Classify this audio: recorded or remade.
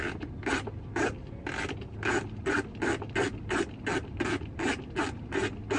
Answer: recorded